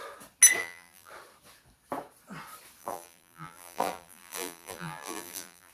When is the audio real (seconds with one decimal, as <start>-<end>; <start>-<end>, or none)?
0.0-0.6; 1.1-2.8